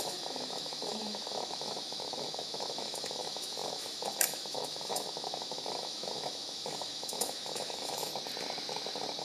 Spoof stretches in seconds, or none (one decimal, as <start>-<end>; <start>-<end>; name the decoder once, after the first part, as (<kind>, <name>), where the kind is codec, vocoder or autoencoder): 0.0-8.1 (autoencoder, DAC-VAE)